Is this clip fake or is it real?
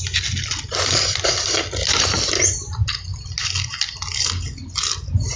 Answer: real